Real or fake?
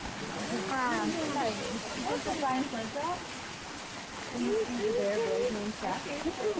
real